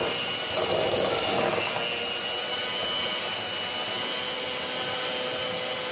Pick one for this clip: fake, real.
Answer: real